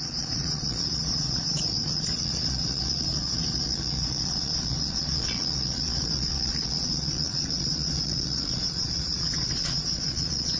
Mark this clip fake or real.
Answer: fake